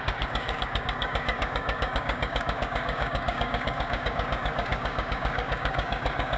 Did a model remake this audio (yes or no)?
yes